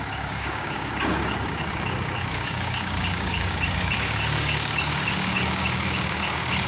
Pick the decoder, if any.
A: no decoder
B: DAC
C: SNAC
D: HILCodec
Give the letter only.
B